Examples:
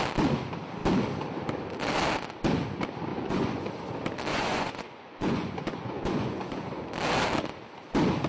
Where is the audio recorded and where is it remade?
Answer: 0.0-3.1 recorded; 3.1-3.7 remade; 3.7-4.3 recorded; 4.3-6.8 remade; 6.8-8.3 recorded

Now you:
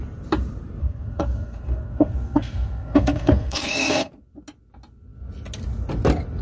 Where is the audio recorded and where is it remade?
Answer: 0.0-0.8 recorded; 0.8-4.1 remade; 4.1-6.4 recorded

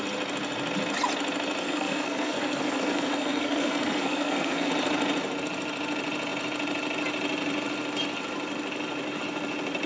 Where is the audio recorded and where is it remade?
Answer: 0.0-1.6 recorded; 1.6-4.7 remade; 4.7-9.9 recorded

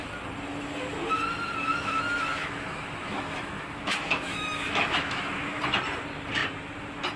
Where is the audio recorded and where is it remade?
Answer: 0.0-1.7 recorded; 1.7-5.6 remade; 5.6-7.2 recorded

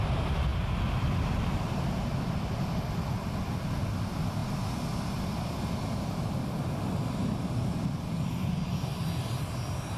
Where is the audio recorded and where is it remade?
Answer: 0.0-10.0 recorded

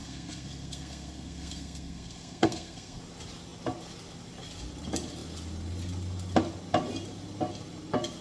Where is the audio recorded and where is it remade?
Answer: 0.0-3.0 remade; 3.0-8.2 recorded

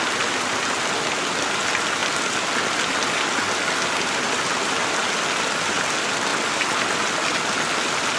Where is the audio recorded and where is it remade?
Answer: 0.0-8.2 recorded